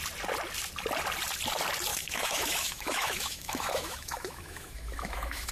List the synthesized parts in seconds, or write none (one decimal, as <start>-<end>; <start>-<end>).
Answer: 1.9-5.5